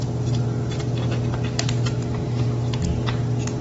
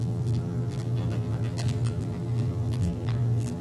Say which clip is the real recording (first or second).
first